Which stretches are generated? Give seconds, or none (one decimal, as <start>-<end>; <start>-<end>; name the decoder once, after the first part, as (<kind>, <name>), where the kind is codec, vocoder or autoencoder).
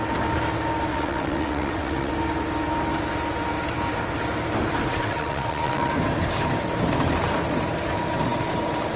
0.9-2.1 (vocoder, WaveNeXt); 4.9-5.9